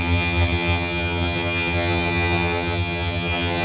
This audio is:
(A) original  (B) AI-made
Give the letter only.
B